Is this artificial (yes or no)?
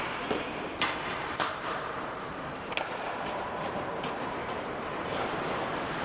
yes